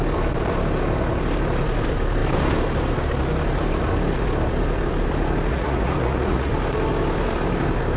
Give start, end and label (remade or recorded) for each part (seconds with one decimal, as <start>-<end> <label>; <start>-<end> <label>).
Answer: 0.0-5.5 recorded; 5.5-6.5 remade; 6.5-8.0 recorded